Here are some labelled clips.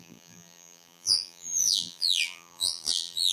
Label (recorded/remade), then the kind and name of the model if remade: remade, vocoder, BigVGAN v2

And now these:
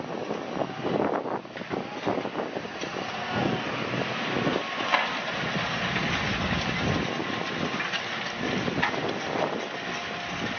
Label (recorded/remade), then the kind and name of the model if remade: recorded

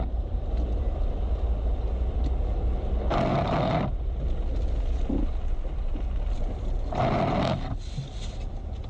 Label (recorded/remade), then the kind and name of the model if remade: recorded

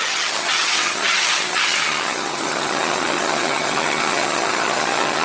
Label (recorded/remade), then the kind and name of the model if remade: remade, vocoder, HiFi-GAN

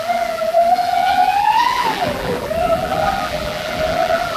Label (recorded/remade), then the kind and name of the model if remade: remade, vocoder, BigVGAN v2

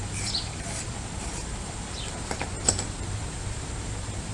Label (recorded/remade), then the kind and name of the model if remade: remade, vocoder, BigVGAN v2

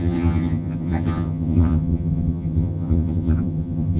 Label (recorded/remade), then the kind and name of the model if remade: remade, vocoder, HiFi-GAN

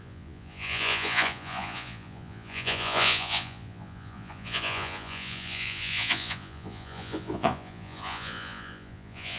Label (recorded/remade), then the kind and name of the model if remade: remade, vocoder, Vocos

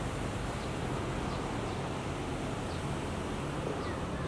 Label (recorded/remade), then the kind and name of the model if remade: recorded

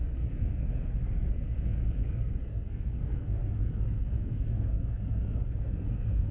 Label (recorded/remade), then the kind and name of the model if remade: remade, codec, SNAC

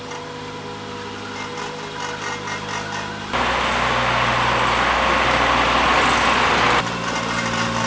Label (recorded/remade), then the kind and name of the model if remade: recorded